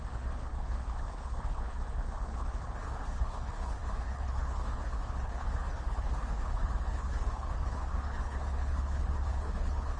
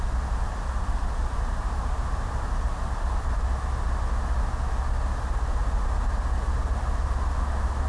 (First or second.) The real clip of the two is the second